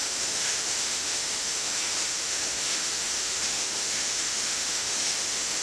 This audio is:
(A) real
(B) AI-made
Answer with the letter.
B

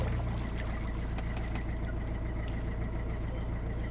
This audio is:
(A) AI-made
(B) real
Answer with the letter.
B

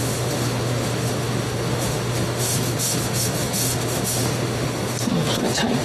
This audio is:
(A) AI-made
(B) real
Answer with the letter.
A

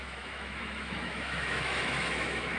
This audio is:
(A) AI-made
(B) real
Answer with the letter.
A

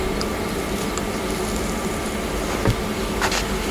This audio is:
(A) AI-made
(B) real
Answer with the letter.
B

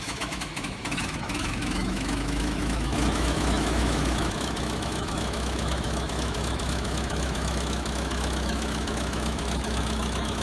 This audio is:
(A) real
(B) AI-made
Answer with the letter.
B